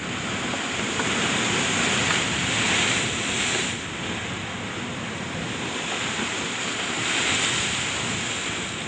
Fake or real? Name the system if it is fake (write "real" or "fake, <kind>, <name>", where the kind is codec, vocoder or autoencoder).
real